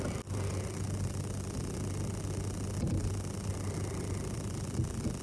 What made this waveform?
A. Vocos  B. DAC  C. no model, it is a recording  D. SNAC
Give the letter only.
C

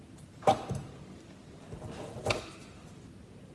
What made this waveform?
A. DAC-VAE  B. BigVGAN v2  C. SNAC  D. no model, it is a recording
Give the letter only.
D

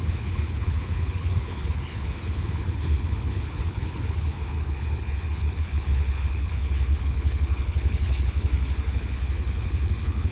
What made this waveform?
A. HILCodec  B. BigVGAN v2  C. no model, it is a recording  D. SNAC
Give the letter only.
A